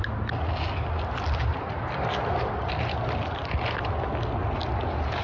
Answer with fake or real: real